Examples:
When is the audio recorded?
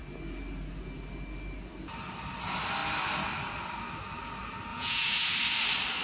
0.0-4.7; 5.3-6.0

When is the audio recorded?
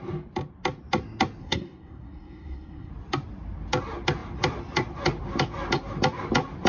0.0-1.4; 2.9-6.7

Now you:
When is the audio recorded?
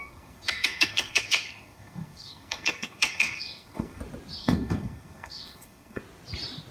4.0-4.4; 6.0-6.7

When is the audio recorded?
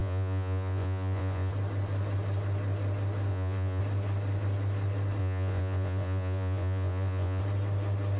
1.5-3.3; 3.8-5.2; 7.4-8.2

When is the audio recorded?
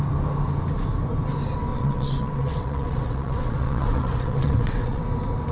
0.0-1.7; 5.0-5.5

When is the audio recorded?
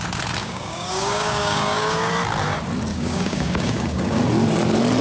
0.0-0.4; 2.1-2.9; 4.2-5.0